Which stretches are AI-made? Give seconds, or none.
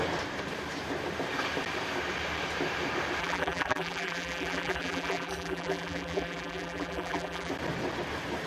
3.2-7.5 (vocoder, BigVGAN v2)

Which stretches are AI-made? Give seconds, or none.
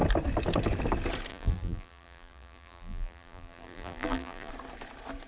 1.3-4.5 (vocoder, BigVGAN v2)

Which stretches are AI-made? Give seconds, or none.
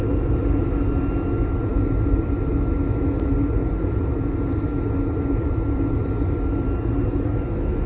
1.7-2.5 (vocoder, BigVGAN v2)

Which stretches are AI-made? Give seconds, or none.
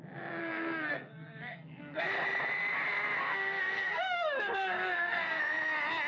0.4-2.1 (codec, SNAC); 3.2-5.4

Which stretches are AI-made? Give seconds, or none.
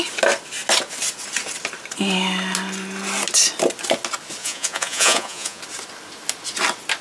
4.4-5.6 (vocoder, Vocos)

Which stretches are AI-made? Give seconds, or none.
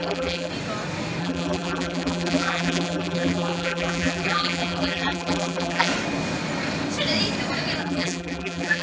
0.0-0.5 (vocoder, BigVGAN v2); 1.2-5.9; 7.8-8.8